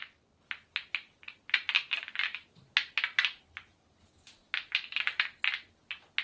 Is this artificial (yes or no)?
no